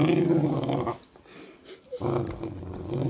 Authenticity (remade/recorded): recorded